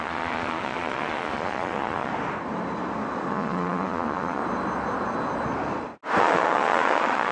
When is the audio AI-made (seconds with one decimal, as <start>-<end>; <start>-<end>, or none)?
0.0-2.1; 3.3-4.4; 6.2-7.3